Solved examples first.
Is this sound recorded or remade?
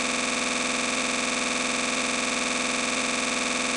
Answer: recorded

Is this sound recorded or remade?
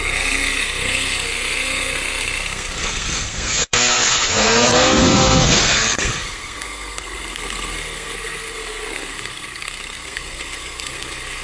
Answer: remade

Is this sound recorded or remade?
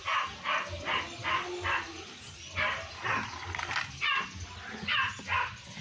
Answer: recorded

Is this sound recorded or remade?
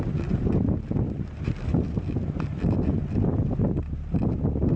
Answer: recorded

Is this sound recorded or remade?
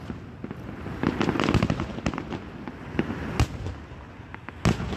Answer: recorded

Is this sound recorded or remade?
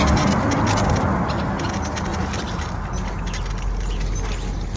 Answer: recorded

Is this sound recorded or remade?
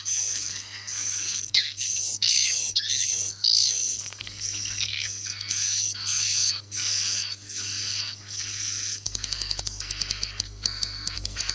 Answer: remade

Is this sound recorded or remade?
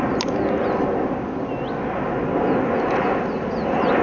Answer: recorded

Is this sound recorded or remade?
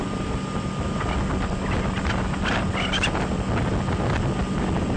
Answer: recorded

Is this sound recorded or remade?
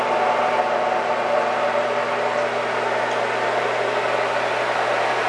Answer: recorded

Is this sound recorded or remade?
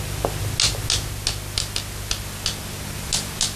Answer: recorded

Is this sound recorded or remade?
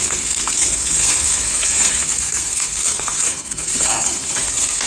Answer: remade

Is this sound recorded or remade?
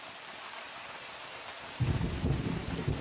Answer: recorded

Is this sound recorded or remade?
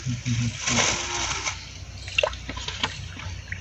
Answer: recorded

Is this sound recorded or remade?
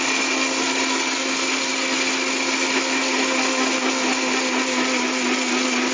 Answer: recorded